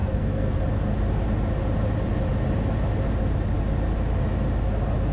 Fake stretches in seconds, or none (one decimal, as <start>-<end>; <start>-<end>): 0.0-0.6